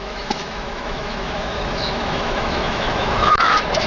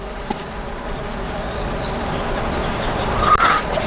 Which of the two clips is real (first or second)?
second